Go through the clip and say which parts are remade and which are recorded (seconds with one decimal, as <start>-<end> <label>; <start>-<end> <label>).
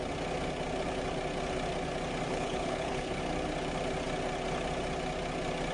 0.0-2.3 recorded; 2.3-3.2 remade; 3.2-5.7 recorded